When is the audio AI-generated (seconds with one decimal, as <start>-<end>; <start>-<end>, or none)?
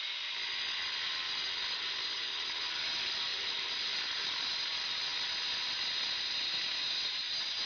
3.3-4.5